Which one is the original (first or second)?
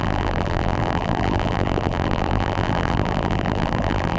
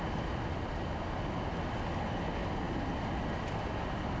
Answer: second